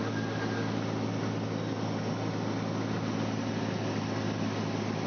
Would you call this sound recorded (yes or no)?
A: yes